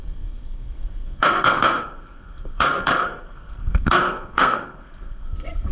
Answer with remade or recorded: remade